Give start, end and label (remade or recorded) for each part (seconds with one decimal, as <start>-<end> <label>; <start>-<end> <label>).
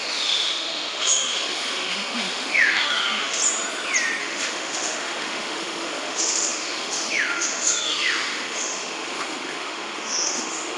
0.0-3.4 remade; 3.4-4.2 recorded; 4.2-10.8 remade